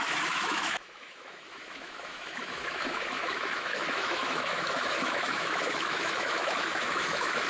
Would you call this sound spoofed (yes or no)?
yes